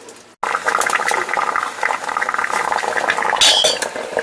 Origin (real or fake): real